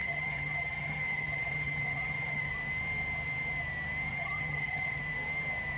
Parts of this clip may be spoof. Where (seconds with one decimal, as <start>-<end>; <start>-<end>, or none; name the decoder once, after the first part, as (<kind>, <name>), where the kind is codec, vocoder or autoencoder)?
0.0-2.5 (vocoder, HiFi-GAN); 4.1-5.0